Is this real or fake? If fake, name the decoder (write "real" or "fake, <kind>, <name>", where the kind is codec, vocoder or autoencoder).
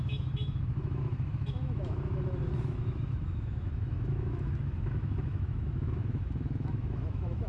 fake, autoencoder, DAC-VAE